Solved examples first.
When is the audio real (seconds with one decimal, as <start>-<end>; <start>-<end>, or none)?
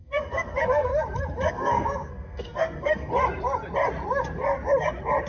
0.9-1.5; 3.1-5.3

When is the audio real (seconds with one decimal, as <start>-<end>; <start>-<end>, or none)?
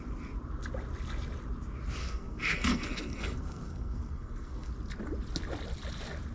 0.0-2.0; 4.7-6.3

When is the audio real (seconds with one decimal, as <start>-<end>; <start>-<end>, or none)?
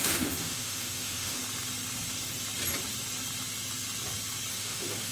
1.4-4.5